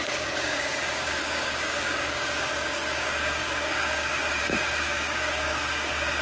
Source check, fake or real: fake